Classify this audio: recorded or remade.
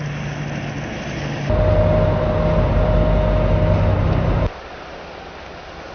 recorded